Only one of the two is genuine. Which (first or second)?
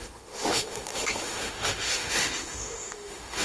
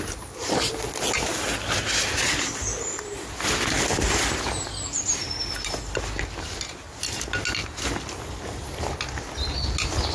second